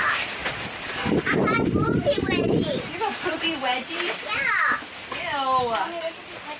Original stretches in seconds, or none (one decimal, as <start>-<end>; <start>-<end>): 0.0-0.4; 4.4-6.6